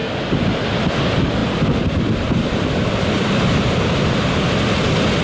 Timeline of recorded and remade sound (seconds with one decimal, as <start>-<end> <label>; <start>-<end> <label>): 0.0-5.2 recorded